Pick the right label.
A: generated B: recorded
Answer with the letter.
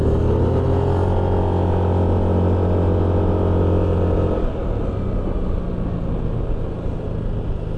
B